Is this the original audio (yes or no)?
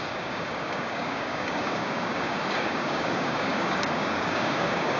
no